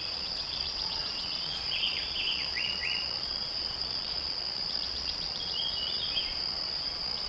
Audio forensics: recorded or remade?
remade